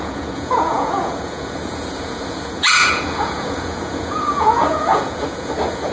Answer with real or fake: fake